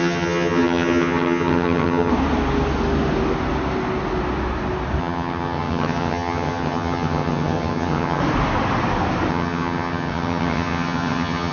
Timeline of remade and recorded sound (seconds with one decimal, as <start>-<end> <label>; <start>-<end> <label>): 0.0-2.1 remade; 2.1-5.0 recorded; 5.0-8.2 remade; 8.2-9.3 recorded; 9.3-11.5 remade